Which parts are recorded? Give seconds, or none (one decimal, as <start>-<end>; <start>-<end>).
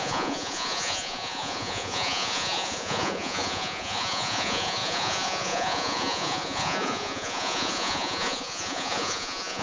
none